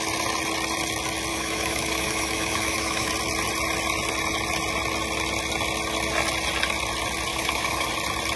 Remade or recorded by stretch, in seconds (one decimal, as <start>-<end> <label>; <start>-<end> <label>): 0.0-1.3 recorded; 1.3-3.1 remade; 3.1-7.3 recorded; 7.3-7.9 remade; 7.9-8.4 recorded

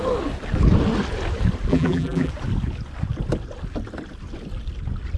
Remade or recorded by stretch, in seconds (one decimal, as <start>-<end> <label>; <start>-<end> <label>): 0.0-1.7 recorded; 1.7-2.3 remade; 2.3-5.2 recorded

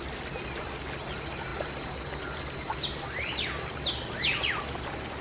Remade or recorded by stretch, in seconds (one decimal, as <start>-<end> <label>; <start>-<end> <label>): 0.0-5.2 recorded

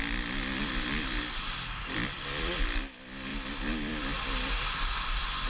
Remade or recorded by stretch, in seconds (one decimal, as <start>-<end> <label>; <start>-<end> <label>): 0.0-0.6 recorded; 0.6-1.2 remade; 1.2-1.8 recorded; 1.8-2.5 remade; 2.5-3.3 recorded; 3.3-5.5 remade

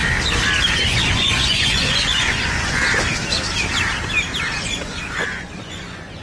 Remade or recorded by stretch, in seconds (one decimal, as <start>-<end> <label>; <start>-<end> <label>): 0.0-0.7 recorded; 0.7-2.8 remade; 2.8-4.5 recorded; 4.5-6.2 remade